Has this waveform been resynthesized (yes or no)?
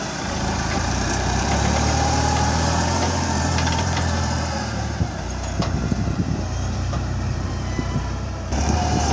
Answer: yes